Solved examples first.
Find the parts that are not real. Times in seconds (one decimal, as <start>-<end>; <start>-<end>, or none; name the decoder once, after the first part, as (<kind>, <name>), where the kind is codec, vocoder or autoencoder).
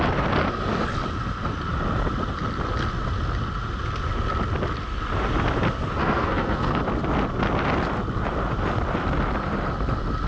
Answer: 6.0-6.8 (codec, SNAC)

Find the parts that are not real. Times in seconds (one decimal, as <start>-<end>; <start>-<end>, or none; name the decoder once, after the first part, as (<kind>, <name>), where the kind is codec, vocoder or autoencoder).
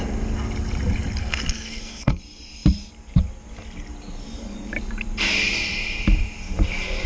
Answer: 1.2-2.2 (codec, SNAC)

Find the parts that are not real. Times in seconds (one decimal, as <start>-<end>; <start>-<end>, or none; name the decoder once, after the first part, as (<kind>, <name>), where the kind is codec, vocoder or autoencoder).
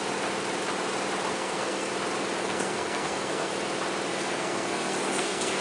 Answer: 1.3-1.9 (codec, SNAC); 2.4-3.5; 4.1-5.6